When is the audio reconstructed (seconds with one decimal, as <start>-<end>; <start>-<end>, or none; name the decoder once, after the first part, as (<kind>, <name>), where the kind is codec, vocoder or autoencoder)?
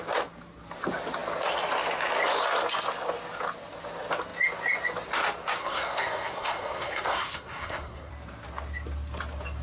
5.6-8.1 (codec, SNAC)